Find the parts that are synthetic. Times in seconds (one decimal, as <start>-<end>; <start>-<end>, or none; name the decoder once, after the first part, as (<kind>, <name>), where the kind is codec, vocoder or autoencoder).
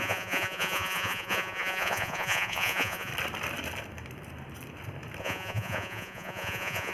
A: 0.0-3.1 (vocoder, Vocos); 5.2-6.9